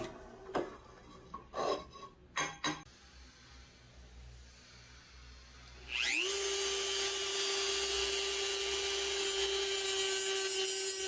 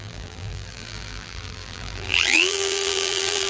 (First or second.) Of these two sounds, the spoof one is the second